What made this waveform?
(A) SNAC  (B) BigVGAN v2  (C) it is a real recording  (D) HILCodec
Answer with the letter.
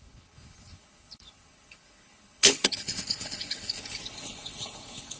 D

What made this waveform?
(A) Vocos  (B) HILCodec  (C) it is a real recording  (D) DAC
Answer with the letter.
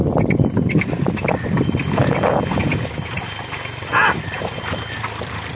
C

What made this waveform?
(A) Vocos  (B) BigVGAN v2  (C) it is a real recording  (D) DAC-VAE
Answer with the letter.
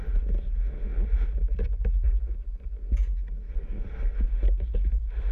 C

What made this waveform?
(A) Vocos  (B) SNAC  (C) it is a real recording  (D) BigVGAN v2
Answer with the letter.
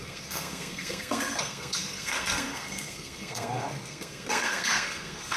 B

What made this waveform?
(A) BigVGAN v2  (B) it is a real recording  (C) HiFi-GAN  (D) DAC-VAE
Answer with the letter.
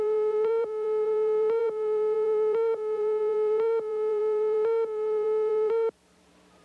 A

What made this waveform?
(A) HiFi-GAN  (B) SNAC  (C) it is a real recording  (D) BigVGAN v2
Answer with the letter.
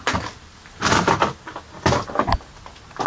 C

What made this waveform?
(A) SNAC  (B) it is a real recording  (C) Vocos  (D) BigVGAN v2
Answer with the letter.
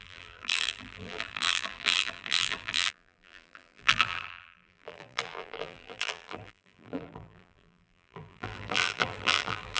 D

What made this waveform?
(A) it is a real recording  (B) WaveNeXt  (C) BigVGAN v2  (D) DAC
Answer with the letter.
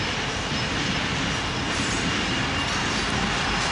A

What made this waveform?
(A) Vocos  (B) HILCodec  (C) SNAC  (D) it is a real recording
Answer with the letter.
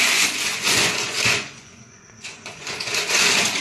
A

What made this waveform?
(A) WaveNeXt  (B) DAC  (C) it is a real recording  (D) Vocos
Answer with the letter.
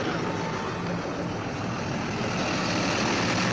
C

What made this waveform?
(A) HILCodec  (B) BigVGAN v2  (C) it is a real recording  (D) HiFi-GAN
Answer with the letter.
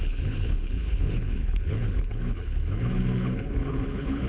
A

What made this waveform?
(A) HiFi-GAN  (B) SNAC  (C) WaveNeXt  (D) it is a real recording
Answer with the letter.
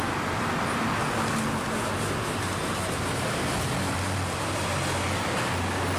D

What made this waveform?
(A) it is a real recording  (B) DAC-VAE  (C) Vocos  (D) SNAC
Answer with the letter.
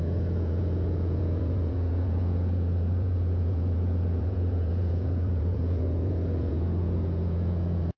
C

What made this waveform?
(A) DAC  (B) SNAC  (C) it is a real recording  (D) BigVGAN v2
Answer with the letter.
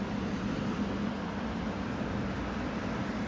C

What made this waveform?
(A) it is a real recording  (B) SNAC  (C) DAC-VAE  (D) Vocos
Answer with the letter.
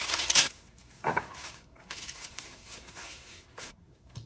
B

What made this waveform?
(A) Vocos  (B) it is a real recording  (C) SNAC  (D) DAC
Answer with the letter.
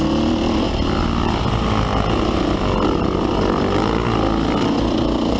B